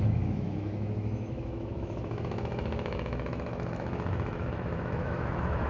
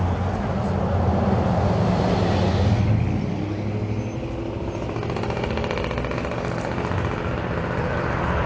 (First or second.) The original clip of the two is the second